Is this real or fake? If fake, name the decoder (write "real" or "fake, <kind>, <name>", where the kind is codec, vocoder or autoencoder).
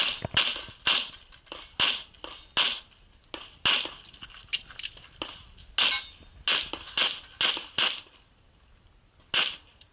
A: real